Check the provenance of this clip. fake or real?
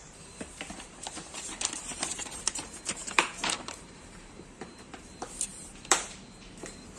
fake